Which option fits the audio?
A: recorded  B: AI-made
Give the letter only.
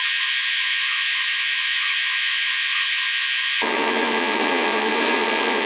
B